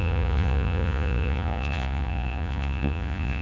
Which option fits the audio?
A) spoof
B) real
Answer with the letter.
A